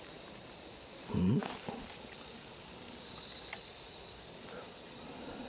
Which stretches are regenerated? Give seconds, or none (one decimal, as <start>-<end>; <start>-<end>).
none